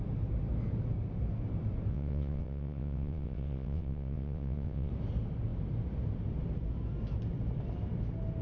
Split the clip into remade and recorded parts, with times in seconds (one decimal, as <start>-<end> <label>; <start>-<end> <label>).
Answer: 0.0-1.9 recorded; 1.9-4.9 remade; 4.9-8.4 recorded